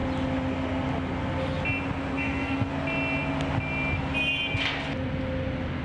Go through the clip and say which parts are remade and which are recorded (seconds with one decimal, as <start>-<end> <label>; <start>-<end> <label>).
0.0-2.1 recorded; 2.1-2.7 remade; 2.7-5.8 recorded